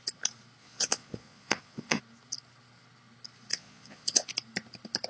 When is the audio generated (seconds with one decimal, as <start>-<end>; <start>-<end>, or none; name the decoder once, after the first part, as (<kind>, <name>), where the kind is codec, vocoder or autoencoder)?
0.6-2.0 (vocoder, Vocos); 3.5-4.3